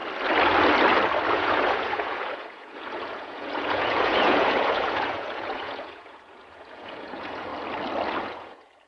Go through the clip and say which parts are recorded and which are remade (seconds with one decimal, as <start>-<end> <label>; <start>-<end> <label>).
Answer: 0.0-1.3 recorded; 1.3-7.5 remade; 7.5-8.2 recorded; 8.2-8.9 remade